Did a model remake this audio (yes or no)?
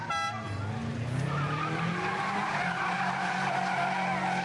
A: no